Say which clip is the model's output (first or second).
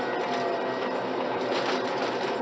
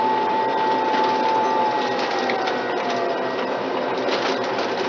second